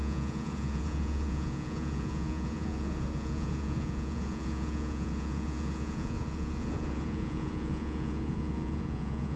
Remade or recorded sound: remade